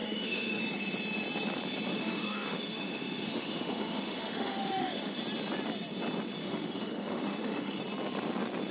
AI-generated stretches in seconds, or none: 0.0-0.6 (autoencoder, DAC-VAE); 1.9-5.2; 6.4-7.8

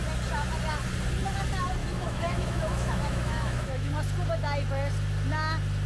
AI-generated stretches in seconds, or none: 1.8-3.9 (autoencoder, DAC-VAE)

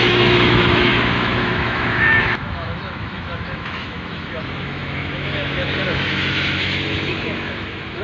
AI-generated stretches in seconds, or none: 0.0-8.0 (autoencoder, DAC-VAE)

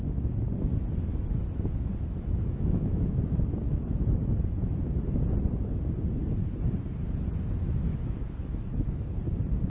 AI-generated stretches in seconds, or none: 1.1-4.8 (autoencoder, DAC-VAE); 7.9-9.1

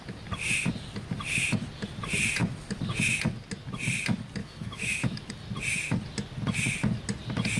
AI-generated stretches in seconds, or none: 4.4-5.3 (autoencoder, DAC-VAE)

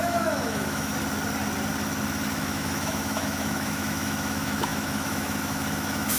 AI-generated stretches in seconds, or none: 0.0-0.9 (autoencoder, DAC-VAE); 2.3-6.2